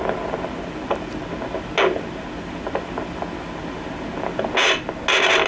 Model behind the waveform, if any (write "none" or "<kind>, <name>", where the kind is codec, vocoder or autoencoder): none